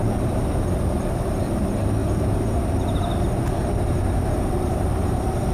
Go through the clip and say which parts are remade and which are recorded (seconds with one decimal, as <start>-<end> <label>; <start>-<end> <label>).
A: 0.0-5.5 remade